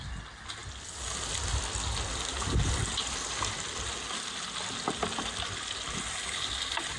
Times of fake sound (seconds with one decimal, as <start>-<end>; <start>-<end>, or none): none